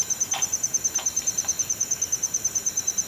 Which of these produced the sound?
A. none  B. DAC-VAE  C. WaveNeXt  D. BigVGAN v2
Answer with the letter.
D